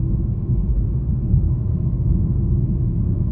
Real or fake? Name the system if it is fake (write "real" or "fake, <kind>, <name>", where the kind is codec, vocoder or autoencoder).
fake, codec, SNAC